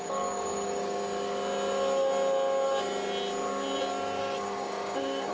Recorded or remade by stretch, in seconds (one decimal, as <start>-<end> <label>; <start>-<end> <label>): 0.0-1.0 remade; 1.0-4.2 recorded; 4.2-5.3 remade